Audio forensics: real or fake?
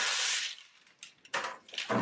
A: real